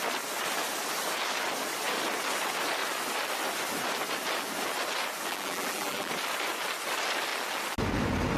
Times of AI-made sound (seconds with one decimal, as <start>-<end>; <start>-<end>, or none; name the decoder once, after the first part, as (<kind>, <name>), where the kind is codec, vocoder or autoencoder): 5.3-6.1 (vocoder, BigVGAN v2)